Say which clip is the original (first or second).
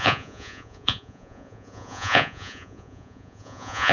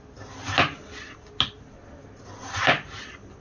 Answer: second